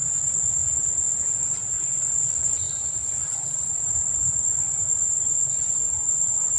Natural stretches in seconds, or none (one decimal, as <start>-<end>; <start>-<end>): 0.0-3.8